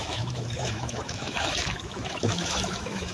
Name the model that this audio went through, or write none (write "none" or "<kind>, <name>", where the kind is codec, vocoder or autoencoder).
autoencoder, DAC-VAE